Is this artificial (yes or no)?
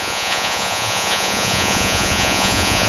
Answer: yes